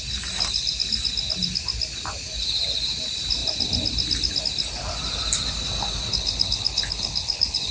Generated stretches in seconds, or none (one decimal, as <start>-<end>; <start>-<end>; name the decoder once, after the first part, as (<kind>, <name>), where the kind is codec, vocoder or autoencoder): 6.1-7.7 (codec, HILCodec)